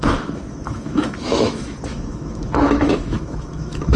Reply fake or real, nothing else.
fake